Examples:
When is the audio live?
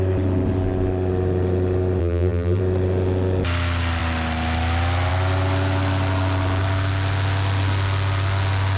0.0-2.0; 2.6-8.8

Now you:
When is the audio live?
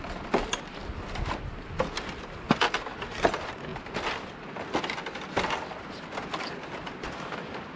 0.8-3.0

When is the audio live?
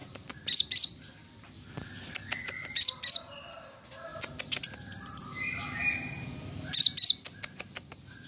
0.0-8.3